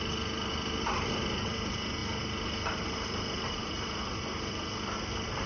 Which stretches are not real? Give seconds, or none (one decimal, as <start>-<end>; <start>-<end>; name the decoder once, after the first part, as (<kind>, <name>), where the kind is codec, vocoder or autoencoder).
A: none